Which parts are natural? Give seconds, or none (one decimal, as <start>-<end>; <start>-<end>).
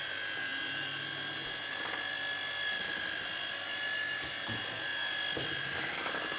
0.0-6.4